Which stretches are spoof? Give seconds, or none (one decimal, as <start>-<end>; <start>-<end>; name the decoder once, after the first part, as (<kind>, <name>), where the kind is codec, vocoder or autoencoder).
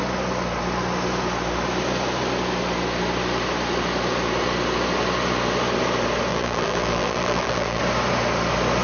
6.3-7.8 (vocoder, BigVGAN v2)